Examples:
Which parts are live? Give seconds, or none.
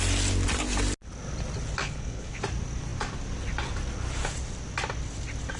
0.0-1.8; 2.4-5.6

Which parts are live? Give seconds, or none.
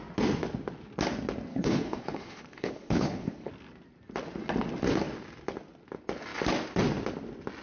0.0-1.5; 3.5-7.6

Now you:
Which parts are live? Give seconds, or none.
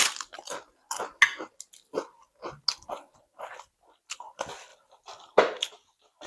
0.0-6.3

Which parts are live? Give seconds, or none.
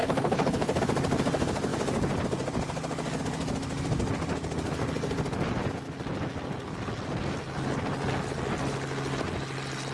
0.8-9.9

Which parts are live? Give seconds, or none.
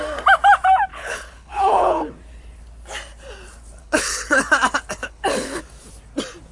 0.0-0.9; 2.1-3.8; 4.4-5.0; 5.6-6.5